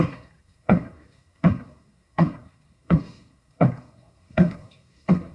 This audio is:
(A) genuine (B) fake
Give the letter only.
B